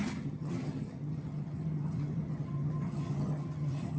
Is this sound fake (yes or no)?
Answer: yes